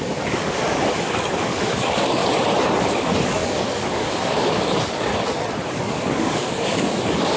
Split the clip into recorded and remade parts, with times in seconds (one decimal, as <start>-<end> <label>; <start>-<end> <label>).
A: 0.0-2.2 remade; 2.2-2.8 recorded; 2.8-5.1 remade; 5.1-5.7 recorded; 5.7-7.4 remade